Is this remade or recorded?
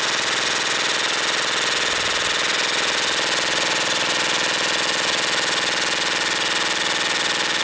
recorded